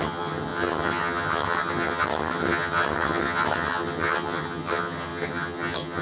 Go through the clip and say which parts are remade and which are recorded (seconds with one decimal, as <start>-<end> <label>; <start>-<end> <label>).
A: 0.0-6.0 remade